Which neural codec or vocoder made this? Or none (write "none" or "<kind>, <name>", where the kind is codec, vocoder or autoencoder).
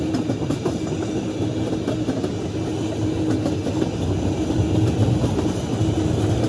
none